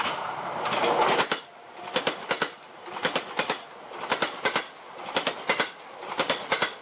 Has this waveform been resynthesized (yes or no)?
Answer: no